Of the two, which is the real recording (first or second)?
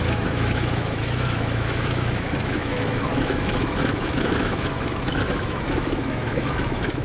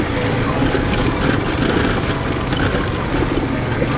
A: second